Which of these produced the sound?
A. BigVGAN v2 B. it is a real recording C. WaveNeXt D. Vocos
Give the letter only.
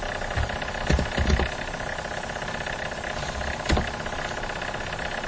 B